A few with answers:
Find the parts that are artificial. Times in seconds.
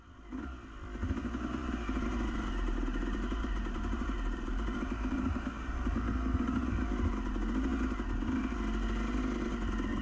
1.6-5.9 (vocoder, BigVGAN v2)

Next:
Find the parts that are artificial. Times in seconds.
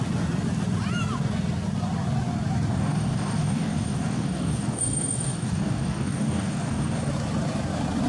2.7-7.1 (codec, DAC)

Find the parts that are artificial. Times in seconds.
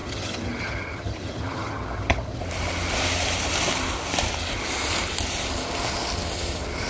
0.0-2.4 (vocoder, HiFi-GAN)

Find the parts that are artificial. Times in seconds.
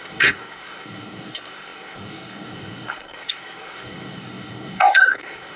0.0-5.6 (codec, SNAC)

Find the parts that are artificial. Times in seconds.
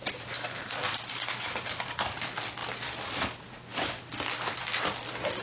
none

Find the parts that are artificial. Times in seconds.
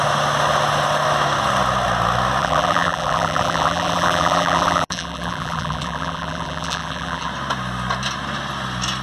2.4-7.3 (vocoder, BigVGAN v2)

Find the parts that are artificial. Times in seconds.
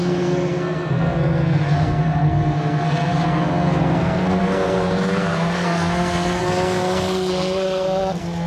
0.0-8.5 (codec, SNAC)